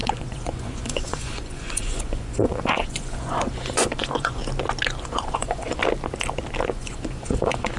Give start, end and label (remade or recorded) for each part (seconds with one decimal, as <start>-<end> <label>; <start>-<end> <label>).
0.0-4.4 remade; 4.4-5.0 recorded; 5.0-5.8 remade; 5.8-6.7 recorded; 6.7-7.8 remade